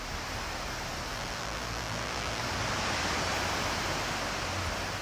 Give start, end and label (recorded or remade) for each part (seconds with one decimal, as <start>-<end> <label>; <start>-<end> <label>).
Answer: 0.0-1.1 recorded; 1.1-2.4 remade; 2.4-5.0 recorded